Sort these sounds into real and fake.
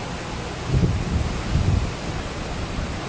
real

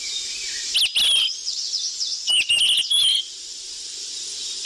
real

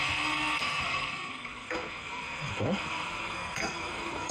fake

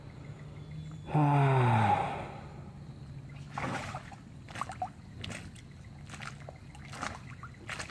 real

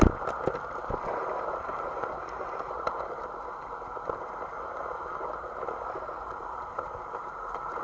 real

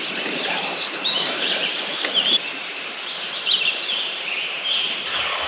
fake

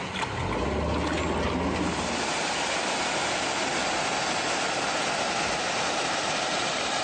real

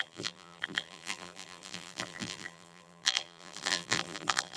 fake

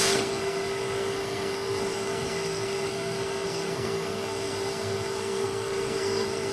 fake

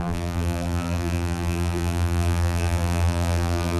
fake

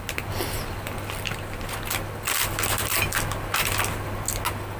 real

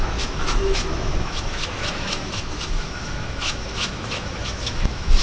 fake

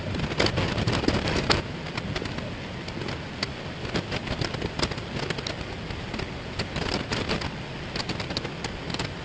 real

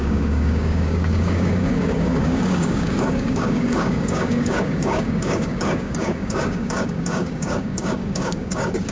fake